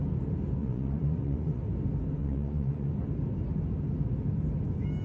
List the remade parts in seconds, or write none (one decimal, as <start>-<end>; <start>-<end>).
0.6-1.6; 2.2-2.9